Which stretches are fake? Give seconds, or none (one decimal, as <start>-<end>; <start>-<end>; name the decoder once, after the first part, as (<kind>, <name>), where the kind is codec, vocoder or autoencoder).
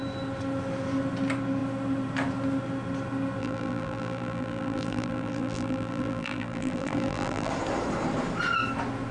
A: 3.4-7.5 (vocoder, BigVGAN v2)